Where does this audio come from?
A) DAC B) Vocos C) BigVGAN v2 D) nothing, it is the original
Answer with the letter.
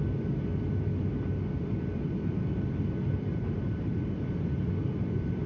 D